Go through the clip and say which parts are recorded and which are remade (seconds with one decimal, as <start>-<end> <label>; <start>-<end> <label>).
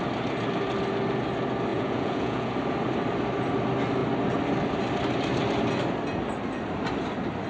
0.0-1.7 recorded; 1.7-2.5 remade; 2.5-7.5 recorded